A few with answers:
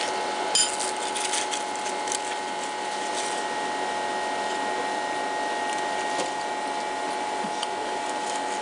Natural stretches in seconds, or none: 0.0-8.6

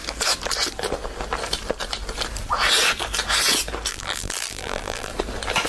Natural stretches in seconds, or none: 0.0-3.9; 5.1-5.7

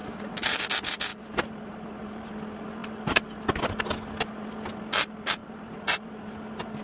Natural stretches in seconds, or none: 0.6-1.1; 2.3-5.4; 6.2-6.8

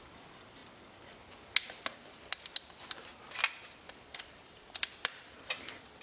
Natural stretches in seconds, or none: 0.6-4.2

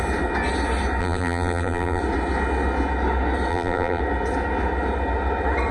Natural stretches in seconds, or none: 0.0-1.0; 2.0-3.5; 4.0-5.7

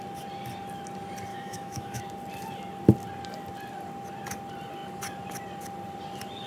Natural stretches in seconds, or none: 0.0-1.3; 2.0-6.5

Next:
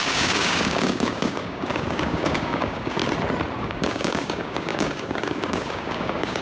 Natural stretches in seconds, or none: 3.0-3.6

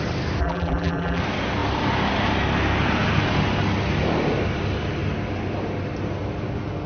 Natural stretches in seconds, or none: 0.0-0.4; 1.2-6.9